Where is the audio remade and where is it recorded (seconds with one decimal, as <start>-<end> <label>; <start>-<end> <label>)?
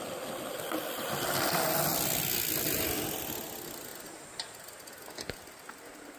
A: 0.0-6.2 recorded